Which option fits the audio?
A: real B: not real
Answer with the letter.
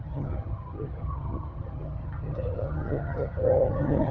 B